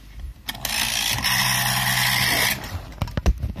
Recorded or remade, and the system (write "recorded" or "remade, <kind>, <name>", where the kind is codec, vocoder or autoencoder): recorded